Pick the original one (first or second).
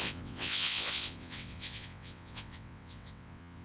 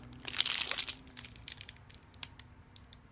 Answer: second